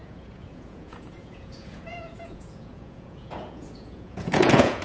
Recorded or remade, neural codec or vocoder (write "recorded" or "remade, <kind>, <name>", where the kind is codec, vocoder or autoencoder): remade, vocoder, Vocos